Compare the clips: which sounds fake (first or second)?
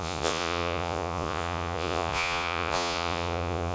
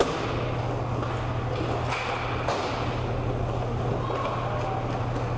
first